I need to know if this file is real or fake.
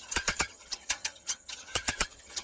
fake